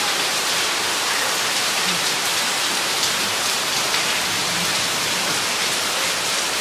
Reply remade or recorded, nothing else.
remade